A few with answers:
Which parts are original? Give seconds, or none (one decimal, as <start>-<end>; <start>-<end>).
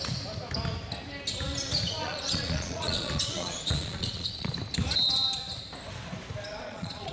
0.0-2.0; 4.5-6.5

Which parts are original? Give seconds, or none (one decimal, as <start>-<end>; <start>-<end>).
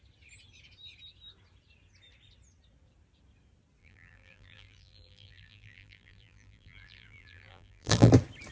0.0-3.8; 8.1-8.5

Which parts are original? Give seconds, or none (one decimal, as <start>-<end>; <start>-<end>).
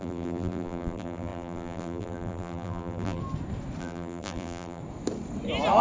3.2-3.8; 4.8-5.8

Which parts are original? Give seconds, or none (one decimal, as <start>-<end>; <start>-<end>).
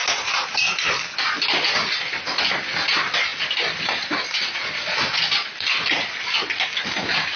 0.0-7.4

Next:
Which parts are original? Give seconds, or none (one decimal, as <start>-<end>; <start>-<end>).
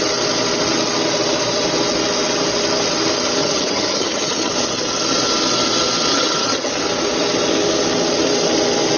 0.0-3.4; 4.5-6.1; 6.7-9.0